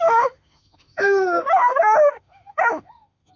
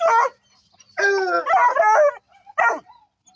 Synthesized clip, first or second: first